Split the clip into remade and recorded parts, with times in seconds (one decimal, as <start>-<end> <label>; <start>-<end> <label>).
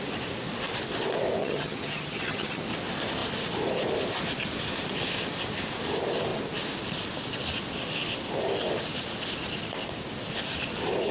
0.0-1.4 recorded; 1.4-2.6 remade; 2.6-11.1 recorded